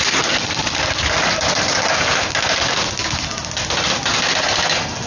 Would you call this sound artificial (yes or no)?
no